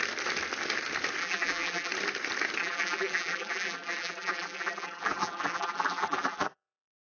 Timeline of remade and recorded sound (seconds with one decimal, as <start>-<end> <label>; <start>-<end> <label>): 0.0-1.2 recorded; 1.2-1.9 remade; 1.9-2.6 recorded; 2.6-7.1 remade